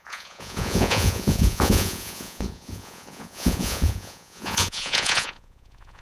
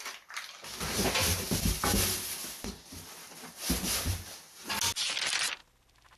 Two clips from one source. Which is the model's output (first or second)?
first